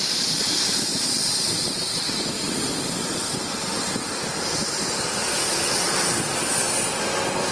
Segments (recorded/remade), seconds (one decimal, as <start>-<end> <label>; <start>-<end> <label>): 0.0-7.5 recorded